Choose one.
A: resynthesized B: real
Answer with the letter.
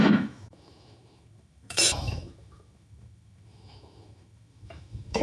A